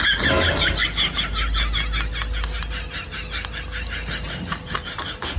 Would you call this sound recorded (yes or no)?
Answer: yes